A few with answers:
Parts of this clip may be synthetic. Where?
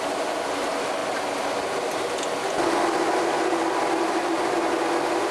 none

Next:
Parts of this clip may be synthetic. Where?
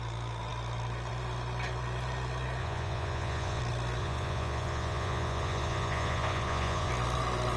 2.6-3.6 (vocoder, Vocos); 4.0-6.9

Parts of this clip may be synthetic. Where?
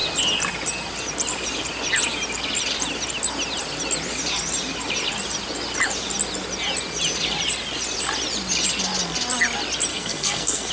9.9-10.7 (codec, SNAC)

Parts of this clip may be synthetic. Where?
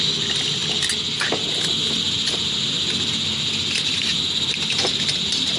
none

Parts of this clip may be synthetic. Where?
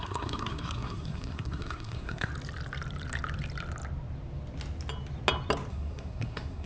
0.0-2.3 (codec, SNAC); 5.7-6.7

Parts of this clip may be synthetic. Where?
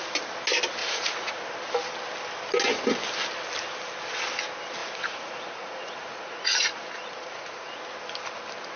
0.8-1.3 (vocoder, Vocos); 4.8-7.8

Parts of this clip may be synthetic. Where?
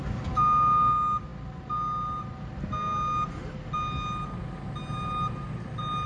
none